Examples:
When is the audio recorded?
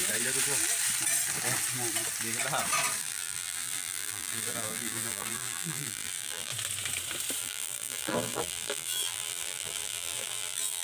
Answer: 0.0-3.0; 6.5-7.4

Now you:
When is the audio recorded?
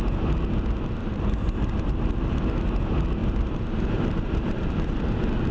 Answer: 0.0-1.0; 2.4-3.2; 5.0-5.5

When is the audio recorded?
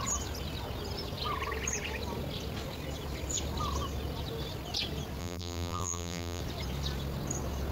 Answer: 0.0-5.2; 6.4-7.7